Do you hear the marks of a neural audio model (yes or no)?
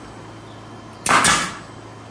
no